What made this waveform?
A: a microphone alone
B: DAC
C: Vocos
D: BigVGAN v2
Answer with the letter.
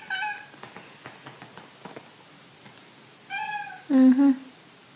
A